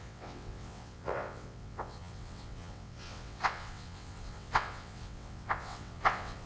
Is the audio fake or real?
fake